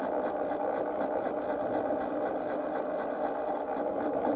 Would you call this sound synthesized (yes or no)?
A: no